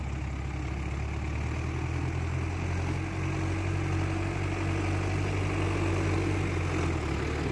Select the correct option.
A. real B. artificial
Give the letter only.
A